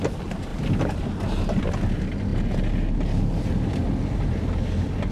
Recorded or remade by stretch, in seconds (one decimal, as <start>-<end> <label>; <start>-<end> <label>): 0.0-5.1 recorded